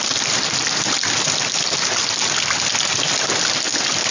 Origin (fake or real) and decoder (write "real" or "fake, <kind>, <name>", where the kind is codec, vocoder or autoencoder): real